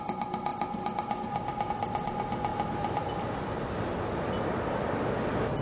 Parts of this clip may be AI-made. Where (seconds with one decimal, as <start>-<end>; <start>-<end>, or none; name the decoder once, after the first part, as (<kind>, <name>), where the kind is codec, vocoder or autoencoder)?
none